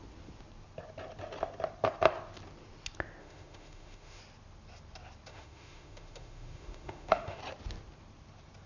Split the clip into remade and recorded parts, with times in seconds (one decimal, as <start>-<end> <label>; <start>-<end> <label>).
0.0-3.2 recorded; 3.2-4.2 remade; 4.2-5.3 recorded; 5.3-7.4 remade; 7.4-8.7 recorded